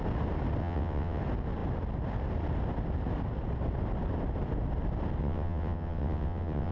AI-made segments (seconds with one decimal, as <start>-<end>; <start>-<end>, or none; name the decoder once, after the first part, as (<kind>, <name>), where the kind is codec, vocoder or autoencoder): 0.6-1.2 (vocoder, WaveNeXt); 5.2-6.7

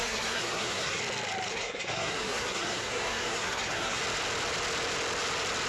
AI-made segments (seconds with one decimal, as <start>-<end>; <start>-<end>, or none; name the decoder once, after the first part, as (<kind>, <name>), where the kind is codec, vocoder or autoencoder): 0.0-1.0 (codec, SNAC); 1.5-4.0

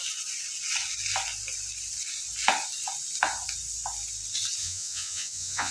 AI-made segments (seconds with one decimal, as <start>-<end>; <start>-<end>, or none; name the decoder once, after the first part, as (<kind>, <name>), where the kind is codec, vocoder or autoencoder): 4.6-5.7 (vocoder, Vocos)

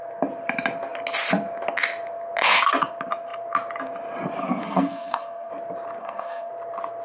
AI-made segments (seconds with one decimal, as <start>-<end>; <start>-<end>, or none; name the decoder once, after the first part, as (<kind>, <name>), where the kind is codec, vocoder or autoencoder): 4.4-5.5 (codec, SNAC); 6.0-6.5

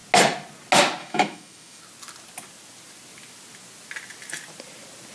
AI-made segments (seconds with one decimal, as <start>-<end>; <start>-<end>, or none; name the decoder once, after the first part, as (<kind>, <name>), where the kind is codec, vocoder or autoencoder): 1.0-1.8 (autoencoder, DAC-VAE)

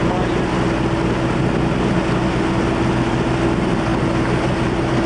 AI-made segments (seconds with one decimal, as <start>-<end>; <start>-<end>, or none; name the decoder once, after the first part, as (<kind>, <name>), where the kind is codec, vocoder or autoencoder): none